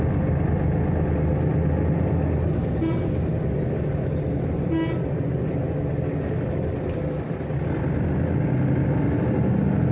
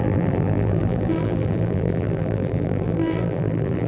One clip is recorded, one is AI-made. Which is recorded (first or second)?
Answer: first